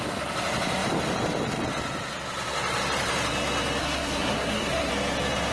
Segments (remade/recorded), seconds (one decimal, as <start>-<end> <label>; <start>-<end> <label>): 0.0-3.8 recorded; 3.8-4.9 remade; 4.9-5.5 recorded